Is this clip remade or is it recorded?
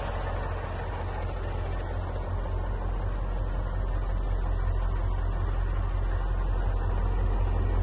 recorded